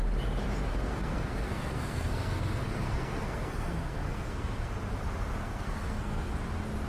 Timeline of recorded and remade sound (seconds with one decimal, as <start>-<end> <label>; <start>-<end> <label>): 0.0-0.7 recorded; 0.7-4.7 remade; 4.7-5.4 recorded; 5.4-6.3 remade; 6.3-6.9 recorded